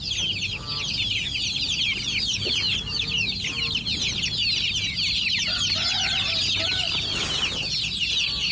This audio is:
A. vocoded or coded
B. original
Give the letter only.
B